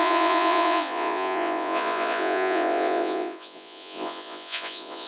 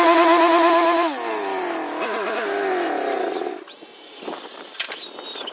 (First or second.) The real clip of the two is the second